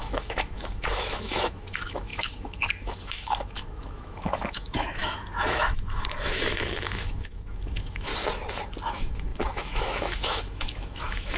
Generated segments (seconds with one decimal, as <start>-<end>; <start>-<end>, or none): 0.0-8.1; 8.9-11.4